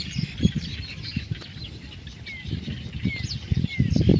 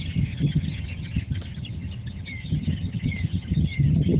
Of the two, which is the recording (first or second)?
first